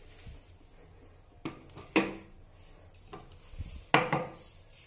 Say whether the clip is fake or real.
real